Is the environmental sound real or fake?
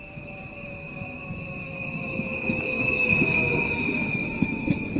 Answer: fake